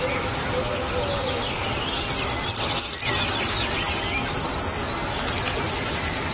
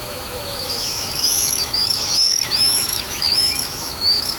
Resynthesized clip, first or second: second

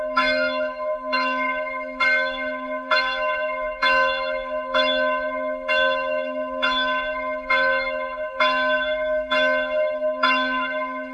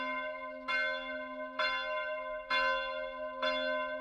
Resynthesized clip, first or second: first